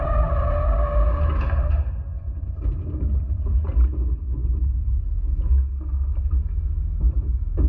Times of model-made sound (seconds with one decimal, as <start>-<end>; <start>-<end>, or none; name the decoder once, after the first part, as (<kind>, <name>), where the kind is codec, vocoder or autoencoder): none